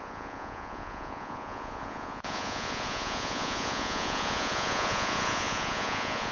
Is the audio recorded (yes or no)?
no